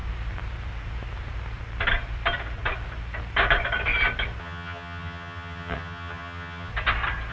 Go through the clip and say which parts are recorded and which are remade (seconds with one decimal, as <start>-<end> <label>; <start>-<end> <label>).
0.0-4.4 recorded; 4.4-6.7 remade; 6.7-7.3 recorded